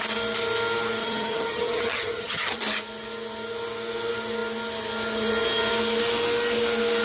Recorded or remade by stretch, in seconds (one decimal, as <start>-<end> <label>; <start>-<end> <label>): 0.0-1.0 recorded; 1.0-2.6 remade; 2.6-7.0 recorded